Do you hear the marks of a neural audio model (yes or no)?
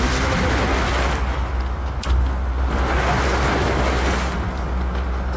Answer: no